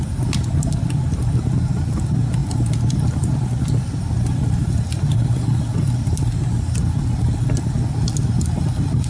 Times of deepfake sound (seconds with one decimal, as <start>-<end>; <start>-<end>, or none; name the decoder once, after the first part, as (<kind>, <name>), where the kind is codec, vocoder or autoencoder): none